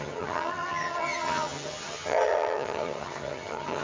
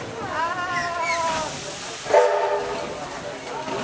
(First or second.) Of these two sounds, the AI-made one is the first